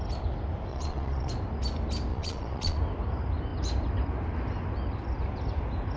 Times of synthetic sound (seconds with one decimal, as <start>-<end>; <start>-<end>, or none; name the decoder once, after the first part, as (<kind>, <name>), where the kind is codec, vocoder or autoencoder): 0.7-1.3 (vocoder, Vocos); 2.1-2.8